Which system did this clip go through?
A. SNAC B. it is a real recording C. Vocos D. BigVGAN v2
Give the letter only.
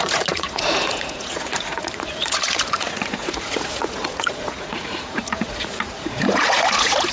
C